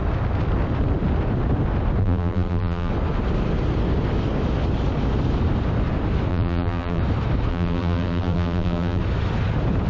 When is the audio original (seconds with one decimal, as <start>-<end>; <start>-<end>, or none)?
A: 0.0-2.0; 2.9-6.3; 7.0-7.5; 9.0-9.9